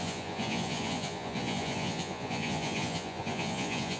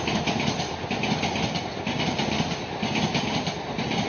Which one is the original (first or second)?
second